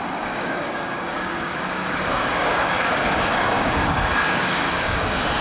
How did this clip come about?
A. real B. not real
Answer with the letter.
B